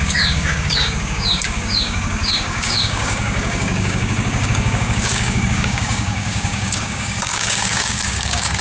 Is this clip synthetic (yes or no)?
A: yes